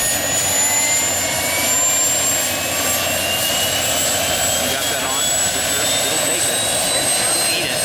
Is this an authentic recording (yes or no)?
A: yes